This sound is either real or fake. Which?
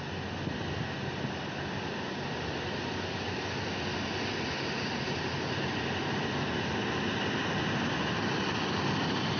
real